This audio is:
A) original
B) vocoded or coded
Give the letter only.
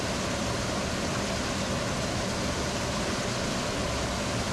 A